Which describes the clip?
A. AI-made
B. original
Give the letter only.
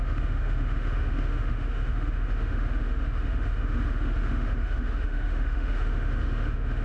A